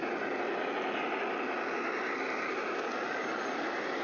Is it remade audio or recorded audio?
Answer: recorded